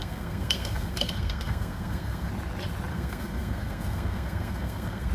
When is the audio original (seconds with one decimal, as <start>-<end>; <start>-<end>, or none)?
2.3-2.9